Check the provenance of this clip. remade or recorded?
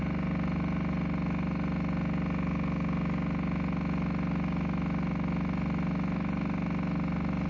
recorded